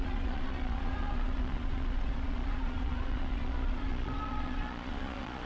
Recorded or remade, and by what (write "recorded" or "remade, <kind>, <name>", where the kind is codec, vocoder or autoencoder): remade, vocoder, Vocos